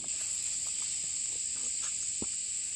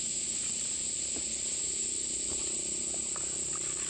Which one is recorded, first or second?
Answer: first